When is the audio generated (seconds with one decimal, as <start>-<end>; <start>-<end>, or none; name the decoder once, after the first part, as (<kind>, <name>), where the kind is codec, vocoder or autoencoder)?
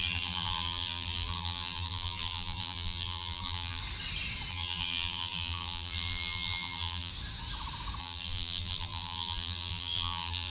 0.0-3.8 (vocoder, BigVGAN v2); 4.5-7.1; 8.0-10.5